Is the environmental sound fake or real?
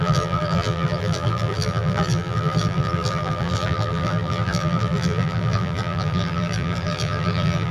fake